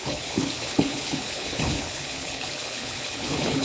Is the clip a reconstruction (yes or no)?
yes